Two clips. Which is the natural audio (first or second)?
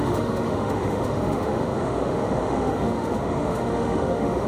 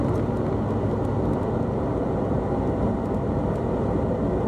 second